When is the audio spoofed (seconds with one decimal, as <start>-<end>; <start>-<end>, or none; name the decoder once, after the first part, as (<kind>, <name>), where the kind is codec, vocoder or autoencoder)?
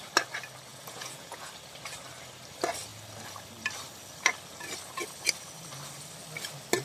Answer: 0.7-1.5 (vocoder, Vocos)